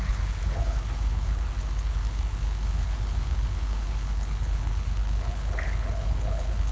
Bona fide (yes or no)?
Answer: no